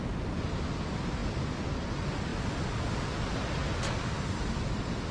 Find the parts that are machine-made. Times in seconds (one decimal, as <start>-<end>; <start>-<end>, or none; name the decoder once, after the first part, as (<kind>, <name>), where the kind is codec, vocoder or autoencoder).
none